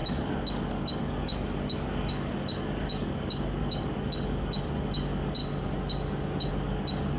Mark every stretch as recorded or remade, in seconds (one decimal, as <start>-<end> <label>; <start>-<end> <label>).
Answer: 0.0-5.4 remade; 5.4-6.5 recorded; 6.5-7.2 remade